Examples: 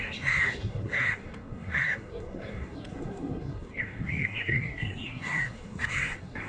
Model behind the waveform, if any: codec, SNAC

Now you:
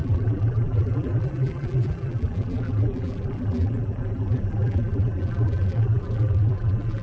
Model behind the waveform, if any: vocoder, BigVGAN v2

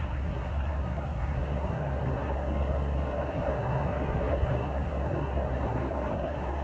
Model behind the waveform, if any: codec, SNAC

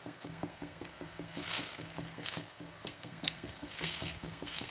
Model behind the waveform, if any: codec, SNAC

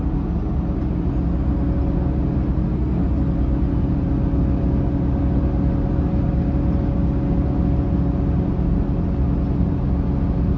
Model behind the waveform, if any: none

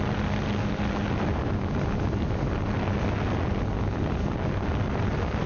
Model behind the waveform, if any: none